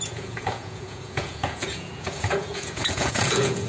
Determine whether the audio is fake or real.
fake